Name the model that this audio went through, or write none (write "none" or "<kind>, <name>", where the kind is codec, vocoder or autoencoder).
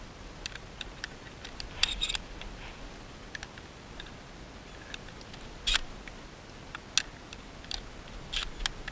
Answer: none